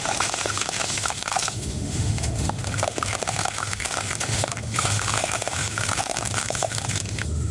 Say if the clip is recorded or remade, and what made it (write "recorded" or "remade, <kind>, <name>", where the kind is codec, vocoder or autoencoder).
remade, autoencoder, DAC-VAE